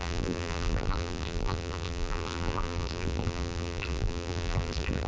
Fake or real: fake